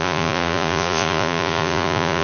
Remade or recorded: remade